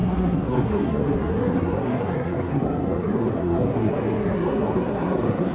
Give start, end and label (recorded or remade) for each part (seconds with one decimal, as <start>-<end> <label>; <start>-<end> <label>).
0.0-5.5 remade